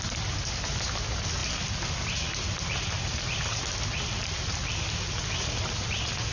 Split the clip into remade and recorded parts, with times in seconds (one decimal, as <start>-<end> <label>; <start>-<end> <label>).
0.0-6.3 recorded